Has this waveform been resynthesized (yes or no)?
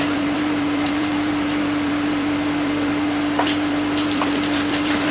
yes